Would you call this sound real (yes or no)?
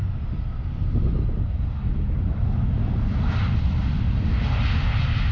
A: yes